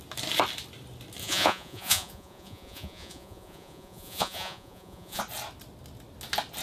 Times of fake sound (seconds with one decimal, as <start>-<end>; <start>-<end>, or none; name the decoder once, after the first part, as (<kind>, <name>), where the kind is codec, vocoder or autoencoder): 1.2-5.2 (vocoder, Vocos)